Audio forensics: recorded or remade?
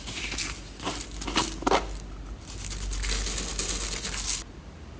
recorded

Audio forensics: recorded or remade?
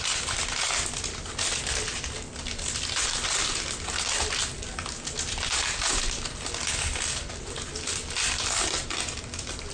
recorded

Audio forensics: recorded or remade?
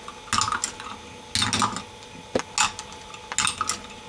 recorded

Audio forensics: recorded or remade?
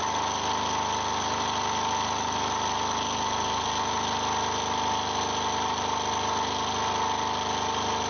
recorded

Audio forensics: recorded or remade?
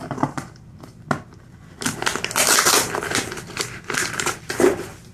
recorded